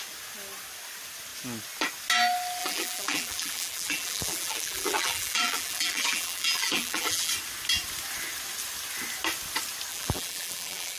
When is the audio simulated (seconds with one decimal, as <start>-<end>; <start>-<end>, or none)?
2.6-7.3; 9.9-11.0